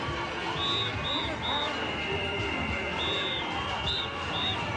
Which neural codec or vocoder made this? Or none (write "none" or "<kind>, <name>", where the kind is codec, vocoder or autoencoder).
none